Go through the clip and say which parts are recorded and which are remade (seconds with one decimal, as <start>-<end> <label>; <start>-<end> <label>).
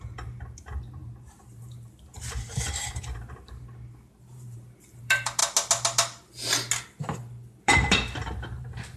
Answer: 0.0-5.4 remade; 5.4-7.6 recorded; 7.6-9.0 remade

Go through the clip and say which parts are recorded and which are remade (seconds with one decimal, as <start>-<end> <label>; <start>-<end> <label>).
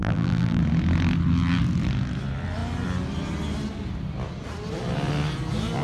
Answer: 0.0-0.6 remade; 0.6-5.8 recorded